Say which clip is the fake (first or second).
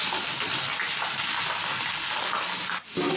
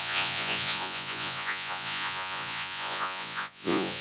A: second